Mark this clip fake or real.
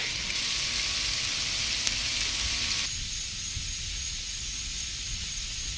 real